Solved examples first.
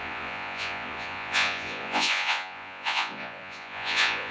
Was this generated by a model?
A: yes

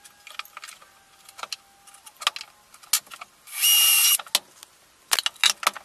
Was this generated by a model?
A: no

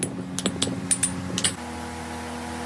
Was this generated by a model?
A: no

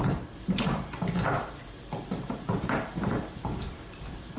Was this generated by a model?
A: yes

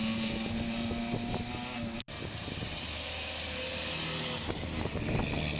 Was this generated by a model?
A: no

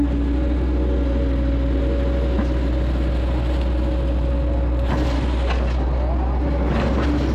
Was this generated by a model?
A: no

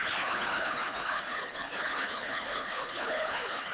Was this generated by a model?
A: yes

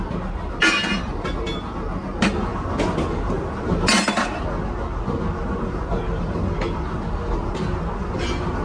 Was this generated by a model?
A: no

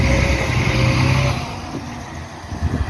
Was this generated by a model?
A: no